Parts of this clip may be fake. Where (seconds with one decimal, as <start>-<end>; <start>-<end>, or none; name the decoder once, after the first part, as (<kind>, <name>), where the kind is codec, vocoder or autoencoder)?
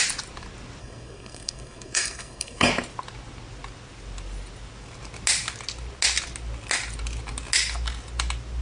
0.8-2.7 (codec, SNAC)